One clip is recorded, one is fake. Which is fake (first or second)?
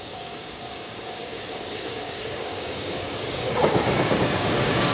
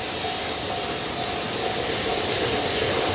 first